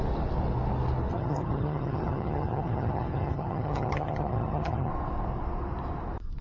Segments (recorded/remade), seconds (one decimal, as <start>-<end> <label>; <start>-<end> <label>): 0.0-1.1 recorded; 1.1-4.9 remade; 4.9-6.4 recorded